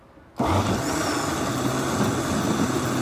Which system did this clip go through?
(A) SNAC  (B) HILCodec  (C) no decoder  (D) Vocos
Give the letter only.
C